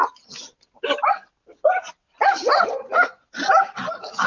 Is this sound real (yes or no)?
yes